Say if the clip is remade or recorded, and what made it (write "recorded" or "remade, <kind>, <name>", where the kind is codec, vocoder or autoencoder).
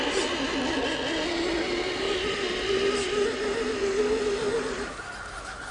recorded